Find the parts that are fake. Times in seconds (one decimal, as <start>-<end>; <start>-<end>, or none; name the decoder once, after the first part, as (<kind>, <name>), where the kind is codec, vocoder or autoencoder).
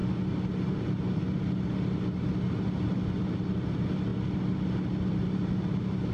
none